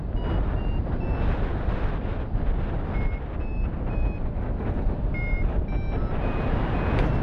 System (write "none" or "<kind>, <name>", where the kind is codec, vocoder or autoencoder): none